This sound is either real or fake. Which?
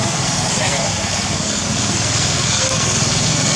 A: fake